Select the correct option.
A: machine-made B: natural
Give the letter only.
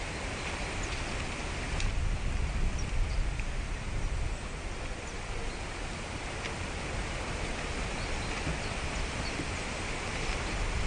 B